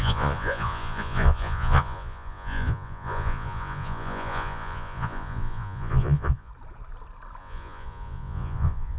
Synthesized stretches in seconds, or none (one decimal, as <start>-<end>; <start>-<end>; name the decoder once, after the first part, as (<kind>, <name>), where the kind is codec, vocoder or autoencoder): 0.0-6.5 (vocoder, Vocos); 7.4-9.0

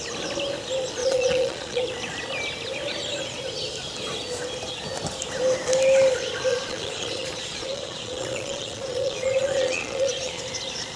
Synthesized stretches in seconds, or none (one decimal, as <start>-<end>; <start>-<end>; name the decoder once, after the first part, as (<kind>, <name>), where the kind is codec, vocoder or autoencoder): 1.0-1.8 (vocoder, Vocos); 6.5-10.4

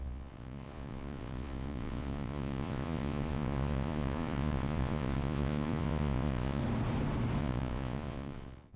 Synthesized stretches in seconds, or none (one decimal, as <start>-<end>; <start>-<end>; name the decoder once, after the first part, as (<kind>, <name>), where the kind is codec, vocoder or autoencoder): 0.0-6.6 (vocoder, Vocos); 7.4-8.8

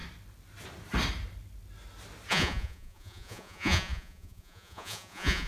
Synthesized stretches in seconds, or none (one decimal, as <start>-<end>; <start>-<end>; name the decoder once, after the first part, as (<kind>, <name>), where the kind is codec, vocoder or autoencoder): 2.3-5.5 (vocoder, Vocos)

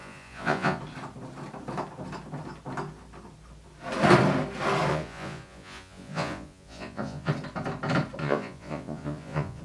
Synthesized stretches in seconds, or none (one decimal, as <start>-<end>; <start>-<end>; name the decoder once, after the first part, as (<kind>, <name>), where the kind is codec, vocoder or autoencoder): 0.0-0.8 (vocoder, Vocos); 4.9-7.3; 8.2-9.6

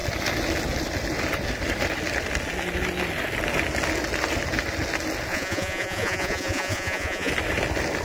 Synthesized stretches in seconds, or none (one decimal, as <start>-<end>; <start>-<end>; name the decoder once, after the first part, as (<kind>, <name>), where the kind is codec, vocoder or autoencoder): 5.3-7.3 (vocoder, Vocos)